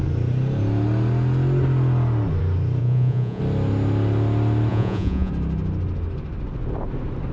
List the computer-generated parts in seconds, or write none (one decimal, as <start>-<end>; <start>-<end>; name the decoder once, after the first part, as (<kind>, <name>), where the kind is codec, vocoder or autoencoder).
2.8-3.4 (vocoder, Vocos); 4.7-5.3